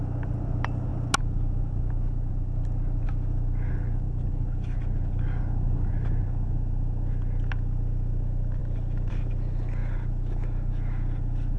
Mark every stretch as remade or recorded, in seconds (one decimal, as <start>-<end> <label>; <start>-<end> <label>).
0.0-11.6 recorded